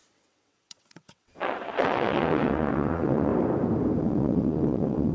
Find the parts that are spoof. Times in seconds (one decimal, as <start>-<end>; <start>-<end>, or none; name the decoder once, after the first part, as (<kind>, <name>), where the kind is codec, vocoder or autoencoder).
0.0-3.3 (vocoder, WaveNeXt); 4.0-5.1